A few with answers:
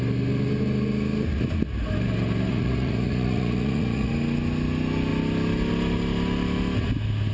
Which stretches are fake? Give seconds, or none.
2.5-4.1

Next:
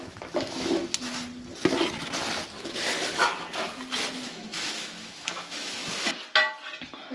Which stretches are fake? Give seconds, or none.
0.0-0.8; 2.6-3.2; 4.0-5.8

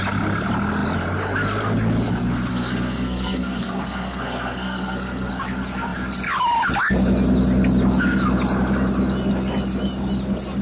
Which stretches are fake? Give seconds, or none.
2.5-5.3

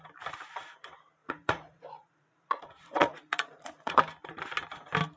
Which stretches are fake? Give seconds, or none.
1.2-4.0

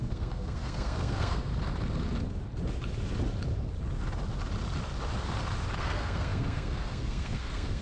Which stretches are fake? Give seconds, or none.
0.0-1.5; 5.8-7.8

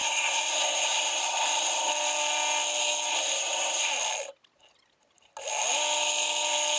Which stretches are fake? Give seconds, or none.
0.0-1.9; 3.1-3.9